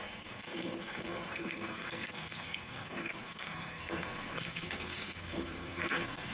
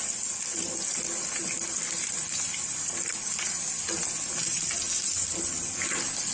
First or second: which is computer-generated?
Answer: first